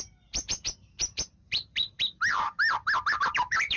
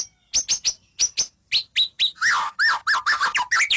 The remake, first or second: first